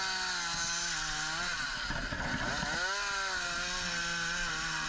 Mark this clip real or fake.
real